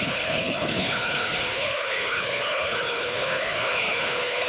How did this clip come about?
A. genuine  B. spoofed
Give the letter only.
B